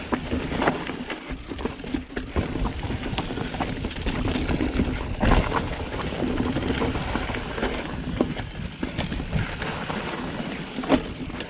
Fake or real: real